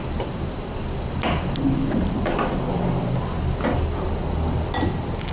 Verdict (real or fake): real